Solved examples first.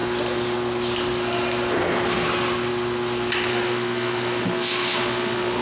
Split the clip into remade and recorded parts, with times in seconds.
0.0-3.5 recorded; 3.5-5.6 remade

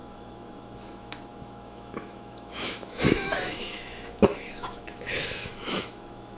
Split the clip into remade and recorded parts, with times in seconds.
0.0-6.4 remade

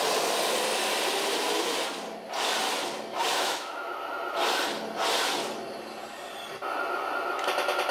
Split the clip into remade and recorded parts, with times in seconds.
0.0-3.3 recorded; 3.3-3.9 remade; 3.9-7.9 recorded

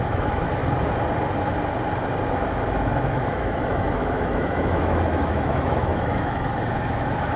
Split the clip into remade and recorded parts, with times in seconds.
0.0-0.6 remade; 0.6-2.3 recorded; 2.3-7.4 remade